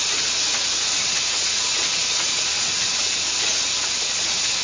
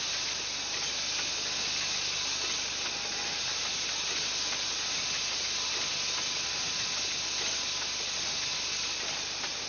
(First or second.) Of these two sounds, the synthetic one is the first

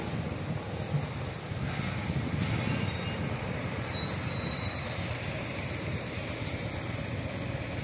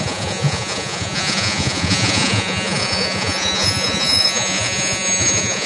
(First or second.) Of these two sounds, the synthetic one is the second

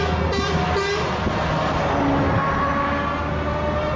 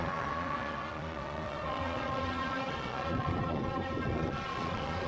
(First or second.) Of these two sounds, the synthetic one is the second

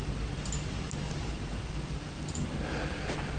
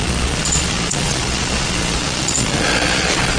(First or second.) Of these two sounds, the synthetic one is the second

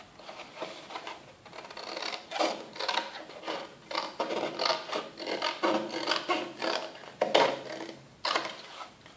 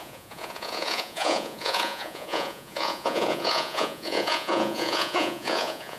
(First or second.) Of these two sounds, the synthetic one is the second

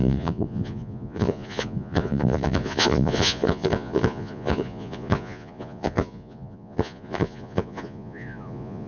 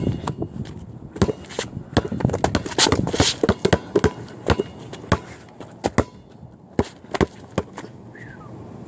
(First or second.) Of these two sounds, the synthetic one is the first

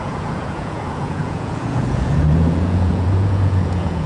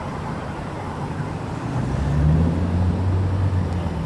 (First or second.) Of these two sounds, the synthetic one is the first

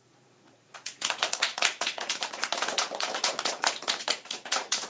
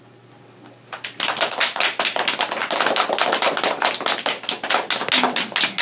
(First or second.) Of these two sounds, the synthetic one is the first